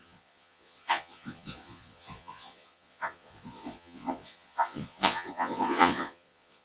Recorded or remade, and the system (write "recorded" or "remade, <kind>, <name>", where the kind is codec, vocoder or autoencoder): remade, vocoder, Vocos